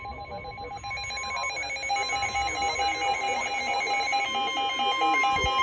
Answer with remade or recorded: recorded